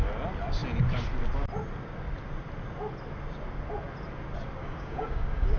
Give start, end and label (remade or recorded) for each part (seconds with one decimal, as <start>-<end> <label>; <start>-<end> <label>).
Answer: 0.0-4.6 recorded; 4.6-5.6 remade